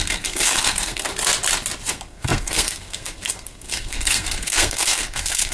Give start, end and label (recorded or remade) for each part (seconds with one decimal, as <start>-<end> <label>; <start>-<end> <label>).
0.0-1.1 remade; 1.1-1.9 recorded; 1.9-5.5 remade

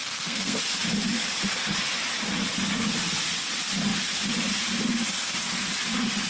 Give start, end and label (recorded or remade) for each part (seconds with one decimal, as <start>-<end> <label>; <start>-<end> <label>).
0.0-0.6 remade; 0.6-6.3 recorded

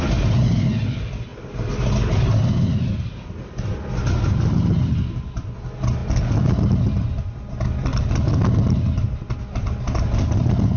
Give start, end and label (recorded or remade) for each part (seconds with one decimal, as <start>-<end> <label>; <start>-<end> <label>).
0.0-10.8 recorded